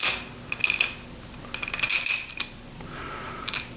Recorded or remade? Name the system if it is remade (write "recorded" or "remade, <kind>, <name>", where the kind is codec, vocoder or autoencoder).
recorded